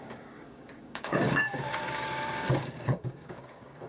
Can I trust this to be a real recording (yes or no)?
no